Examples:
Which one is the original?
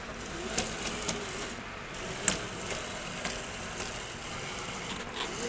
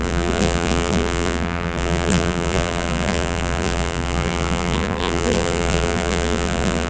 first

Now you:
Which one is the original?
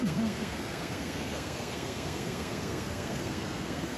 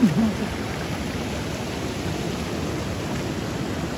second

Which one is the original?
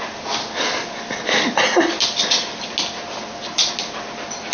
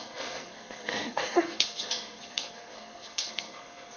first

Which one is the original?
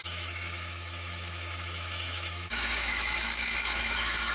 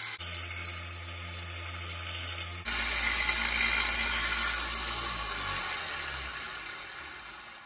second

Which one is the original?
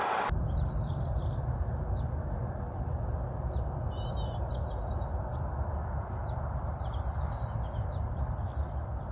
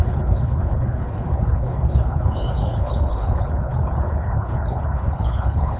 first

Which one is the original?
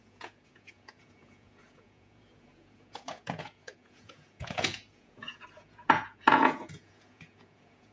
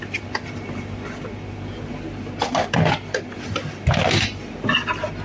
second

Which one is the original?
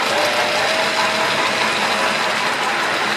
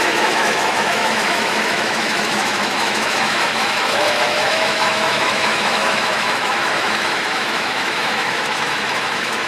first